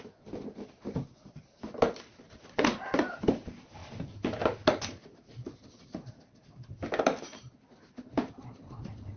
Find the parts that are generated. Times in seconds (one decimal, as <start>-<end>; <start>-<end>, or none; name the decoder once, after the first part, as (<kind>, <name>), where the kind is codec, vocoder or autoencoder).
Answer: none